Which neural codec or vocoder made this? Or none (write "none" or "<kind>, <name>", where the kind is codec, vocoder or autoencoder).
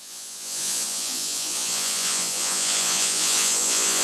vocoder, Vocos